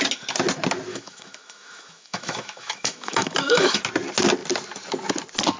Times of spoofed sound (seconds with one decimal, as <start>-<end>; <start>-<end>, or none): 0.9-3.8